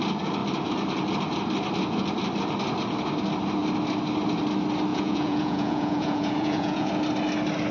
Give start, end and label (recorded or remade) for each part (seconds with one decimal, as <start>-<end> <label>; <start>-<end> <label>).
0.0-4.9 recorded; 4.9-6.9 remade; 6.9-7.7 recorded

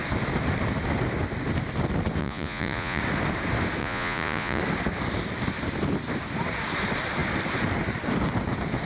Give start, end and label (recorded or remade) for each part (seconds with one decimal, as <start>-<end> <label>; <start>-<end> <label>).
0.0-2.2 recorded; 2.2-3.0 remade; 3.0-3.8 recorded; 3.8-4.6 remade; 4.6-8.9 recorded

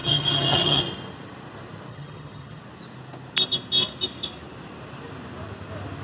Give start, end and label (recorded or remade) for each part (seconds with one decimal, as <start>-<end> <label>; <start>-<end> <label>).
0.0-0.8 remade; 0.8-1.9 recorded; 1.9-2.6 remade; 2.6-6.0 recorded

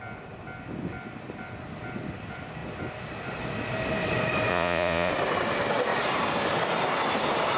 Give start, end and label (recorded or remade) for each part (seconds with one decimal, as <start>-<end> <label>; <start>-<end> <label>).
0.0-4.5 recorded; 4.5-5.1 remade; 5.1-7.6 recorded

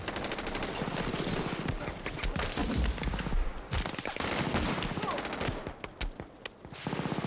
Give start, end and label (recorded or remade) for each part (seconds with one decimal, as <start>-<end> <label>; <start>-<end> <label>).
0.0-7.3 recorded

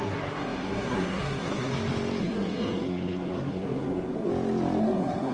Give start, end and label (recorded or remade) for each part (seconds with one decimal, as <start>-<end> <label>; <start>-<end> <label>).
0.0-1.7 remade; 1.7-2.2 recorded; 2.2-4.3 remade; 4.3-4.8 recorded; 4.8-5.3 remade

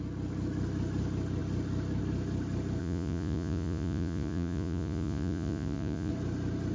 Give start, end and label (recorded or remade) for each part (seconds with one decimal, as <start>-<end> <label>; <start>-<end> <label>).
0.0-2.8 recorded; 2.8-6.1 remade; 6.1-6.7 recorded